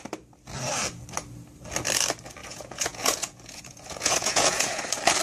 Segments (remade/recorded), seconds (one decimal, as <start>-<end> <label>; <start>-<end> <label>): 0.0-2.4 recorded; 2.4-4.8 remade; 4.8-5.2 recorded